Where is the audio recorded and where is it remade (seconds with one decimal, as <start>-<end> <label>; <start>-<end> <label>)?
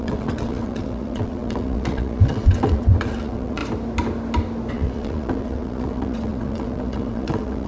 0.0-3.6 remade; 3.6-4.7 recorded; 4.7-7.7 remade